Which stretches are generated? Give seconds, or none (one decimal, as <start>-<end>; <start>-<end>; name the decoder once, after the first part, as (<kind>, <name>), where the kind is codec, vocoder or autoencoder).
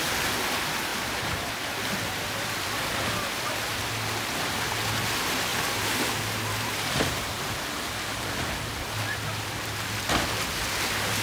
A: 0.9-1.5 (vocoder, BigVGAN v2); 5.5-7.5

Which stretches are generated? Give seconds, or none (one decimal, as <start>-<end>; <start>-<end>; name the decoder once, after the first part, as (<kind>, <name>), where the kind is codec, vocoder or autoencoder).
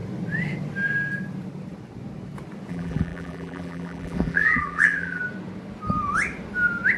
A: 2.7-5.2 (vocoder, BigVGAN v2)